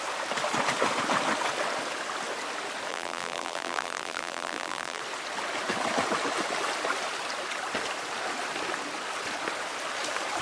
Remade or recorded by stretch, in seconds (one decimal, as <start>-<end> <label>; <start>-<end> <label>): 0.0-2.9 recorded; 2.9-5.0 remade; 5.0-10.4 recorded